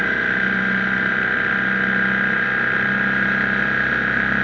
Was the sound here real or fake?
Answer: real